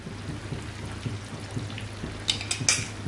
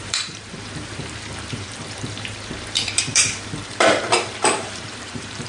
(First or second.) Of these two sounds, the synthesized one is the second